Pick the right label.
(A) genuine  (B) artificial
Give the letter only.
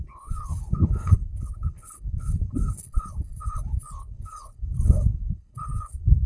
B